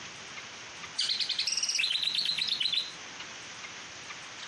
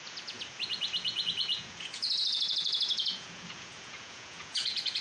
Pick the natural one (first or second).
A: first